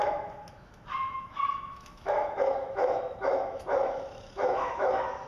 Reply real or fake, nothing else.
fake